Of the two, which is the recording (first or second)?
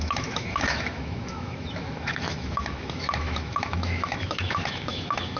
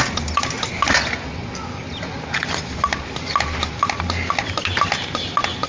second